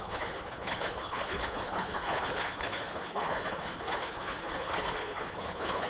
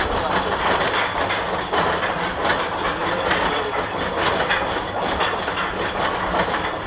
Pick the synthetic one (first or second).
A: first